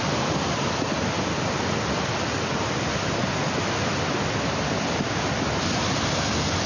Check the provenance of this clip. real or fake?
real